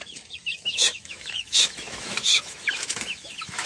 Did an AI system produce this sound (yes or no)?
yes